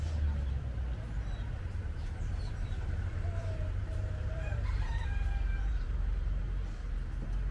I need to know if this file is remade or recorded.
remade